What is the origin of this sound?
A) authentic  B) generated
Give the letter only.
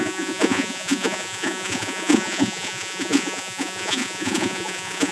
B